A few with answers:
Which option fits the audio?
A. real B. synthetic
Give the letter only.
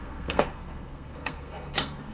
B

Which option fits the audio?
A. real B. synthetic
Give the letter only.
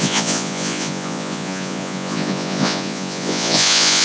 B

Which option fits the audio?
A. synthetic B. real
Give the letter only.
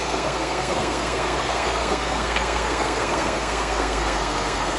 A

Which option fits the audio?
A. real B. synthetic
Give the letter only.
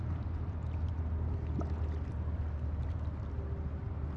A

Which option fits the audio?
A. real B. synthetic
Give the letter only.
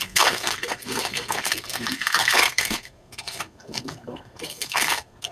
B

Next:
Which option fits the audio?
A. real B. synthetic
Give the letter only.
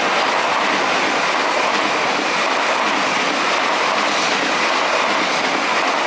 A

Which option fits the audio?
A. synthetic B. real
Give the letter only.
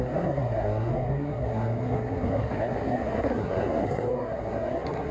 A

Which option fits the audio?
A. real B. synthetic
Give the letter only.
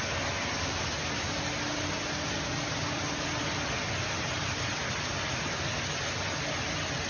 A